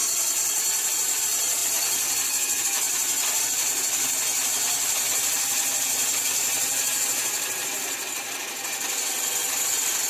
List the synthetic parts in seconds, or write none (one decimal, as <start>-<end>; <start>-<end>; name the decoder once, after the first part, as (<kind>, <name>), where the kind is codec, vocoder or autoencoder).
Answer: none